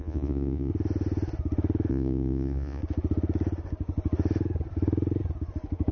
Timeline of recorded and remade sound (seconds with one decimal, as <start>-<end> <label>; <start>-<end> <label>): 0.0-0.7 remade; 0.7-1.9 recorded; 1.9-2.8 remade; 2.8-5.9 recorded